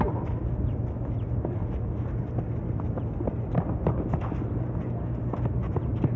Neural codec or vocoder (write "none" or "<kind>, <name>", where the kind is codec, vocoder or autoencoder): none